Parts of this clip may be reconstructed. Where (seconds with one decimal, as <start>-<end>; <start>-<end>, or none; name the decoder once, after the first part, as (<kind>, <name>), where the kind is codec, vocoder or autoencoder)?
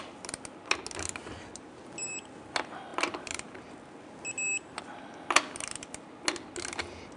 none